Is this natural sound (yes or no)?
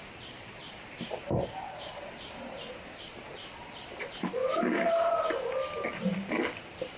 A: no